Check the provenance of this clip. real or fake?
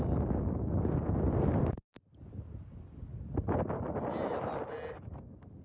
real